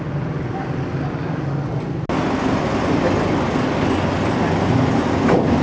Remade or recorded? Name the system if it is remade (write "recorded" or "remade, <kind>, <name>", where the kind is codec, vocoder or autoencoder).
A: recorded